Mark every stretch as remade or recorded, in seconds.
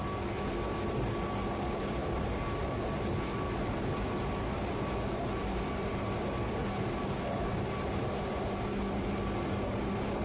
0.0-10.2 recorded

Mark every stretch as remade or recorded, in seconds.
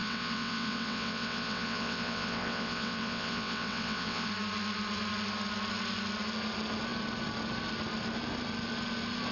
0.0-4.3 remade; 4.3-9.3 recorded